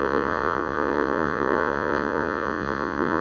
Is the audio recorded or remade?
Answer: remade